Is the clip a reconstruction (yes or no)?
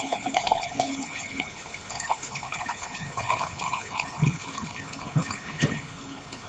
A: yes